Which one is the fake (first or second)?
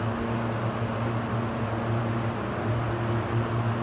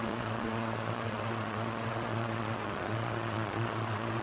second